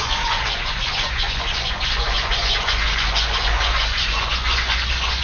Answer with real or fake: fake